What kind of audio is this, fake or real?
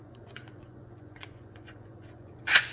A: fake